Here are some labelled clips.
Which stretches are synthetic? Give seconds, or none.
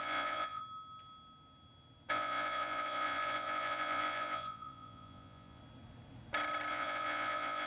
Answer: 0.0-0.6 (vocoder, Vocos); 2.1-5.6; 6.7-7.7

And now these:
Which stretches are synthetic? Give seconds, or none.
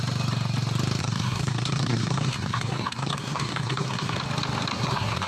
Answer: 1.0-4.2 (codec, SNAC); 4.7-5.3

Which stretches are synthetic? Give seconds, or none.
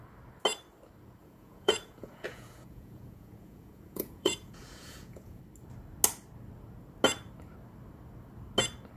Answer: 1.2-5.4 (vocoder, Vocos)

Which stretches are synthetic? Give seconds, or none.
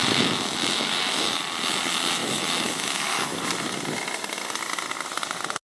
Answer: 0.0-1.4 (autoencoder, DAC-VAE); 2.2-3.4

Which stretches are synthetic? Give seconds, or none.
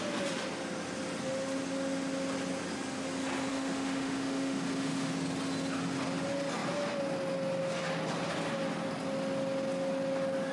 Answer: 3.5-5.1 (autoencoder, DAC-VAE)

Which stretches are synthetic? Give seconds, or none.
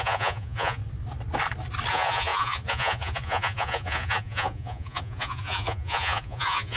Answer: 0.0-0.8 (vocoder, Vocos); 1.9-6.8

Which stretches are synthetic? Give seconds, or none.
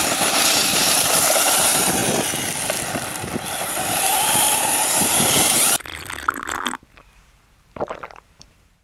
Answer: 0.0-2.0 (vocoder, BigVGAN v2); 3.8-5.9; 7.0-8.8